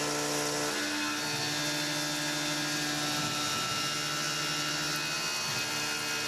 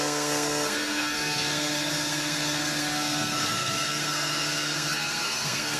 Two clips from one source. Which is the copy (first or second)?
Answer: second